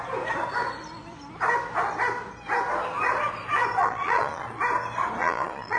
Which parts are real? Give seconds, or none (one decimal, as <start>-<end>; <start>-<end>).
0.0-3.8; 4.6-5.2